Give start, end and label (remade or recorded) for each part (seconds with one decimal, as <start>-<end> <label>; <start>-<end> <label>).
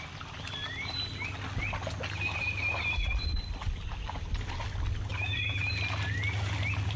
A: 0.0-5.1 recorded; 5.1-5.7 remade; 5.7-7.0 recorded